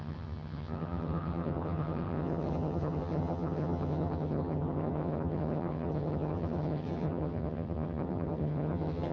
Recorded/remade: remade